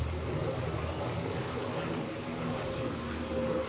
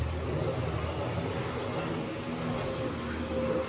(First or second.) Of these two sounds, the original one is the second